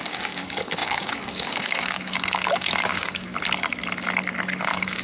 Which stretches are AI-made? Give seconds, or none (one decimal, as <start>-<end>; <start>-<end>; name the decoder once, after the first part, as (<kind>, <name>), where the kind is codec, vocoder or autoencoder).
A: 0.0-3.3 (codec, DAC); 4.6-5.0